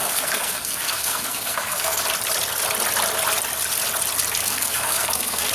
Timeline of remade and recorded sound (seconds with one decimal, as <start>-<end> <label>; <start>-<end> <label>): 0.0-2.0 remade; 2.0-4.4 recorded; 4.4-5.5 remade